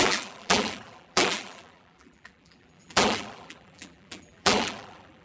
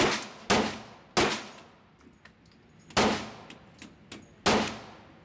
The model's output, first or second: first